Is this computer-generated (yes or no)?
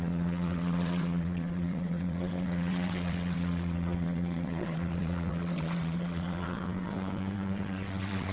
yes